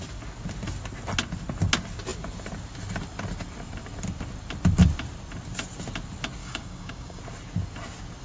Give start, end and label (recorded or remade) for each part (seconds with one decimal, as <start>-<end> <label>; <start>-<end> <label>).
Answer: 0.0-6.4 recorded; 6.4-7.2 remade; 7.2-8.2 recorded